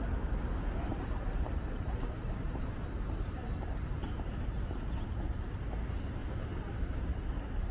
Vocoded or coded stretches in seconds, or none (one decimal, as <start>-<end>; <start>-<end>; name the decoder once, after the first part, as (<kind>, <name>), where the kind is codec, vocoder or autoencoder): 0.9-5.5 (vocoder, BigVGAN v2); 6.2-7.7